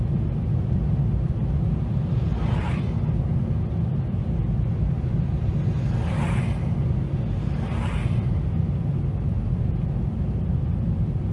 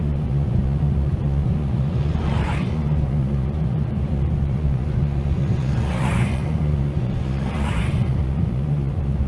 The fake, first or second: second